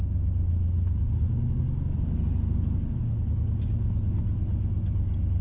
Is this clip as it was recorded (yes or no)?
yes